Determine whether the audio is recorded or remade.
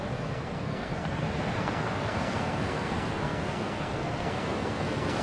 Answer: remade